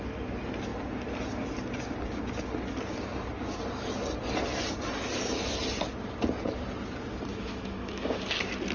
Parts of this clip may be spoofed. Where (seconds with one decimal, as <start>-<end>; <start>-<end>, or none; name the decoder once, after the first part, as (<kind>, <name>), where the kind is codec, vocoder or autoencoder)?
7.3-8.2 (autoencoder, DAC-VAE)